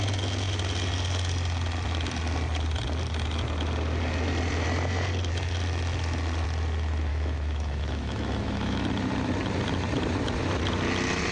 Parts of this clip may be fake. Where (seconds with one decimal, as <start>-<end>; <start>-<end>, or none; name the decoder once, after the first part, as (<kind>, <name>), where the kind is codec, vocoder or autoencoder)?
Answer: 7.1-8.8 (autoencoder, DAC-VAE)